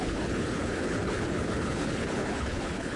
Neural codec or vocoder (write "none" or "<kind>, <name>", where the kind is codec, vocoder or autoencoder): codec, HILCodec